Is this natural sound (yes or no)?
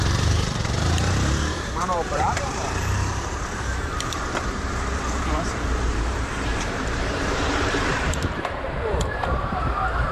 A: no